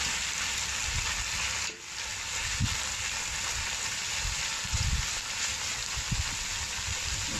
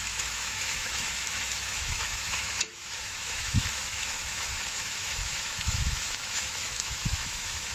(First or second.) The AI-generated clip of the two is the second